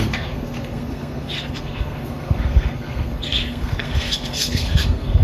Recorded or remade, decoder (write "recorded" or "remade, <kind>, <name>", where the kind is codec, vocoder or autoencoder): remade, codec, SNAC